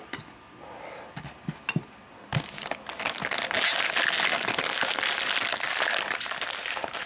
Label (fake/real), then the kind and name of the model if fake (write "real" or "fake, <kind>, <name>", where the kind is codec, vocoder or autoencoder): real